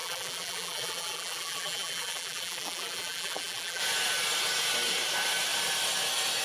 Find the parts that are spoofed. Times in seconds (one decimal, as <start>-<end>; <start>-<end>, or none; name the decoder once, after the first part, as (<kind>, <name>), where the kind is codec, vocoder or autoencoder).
0.0-3.8 (vocoder, BigVGAN v2)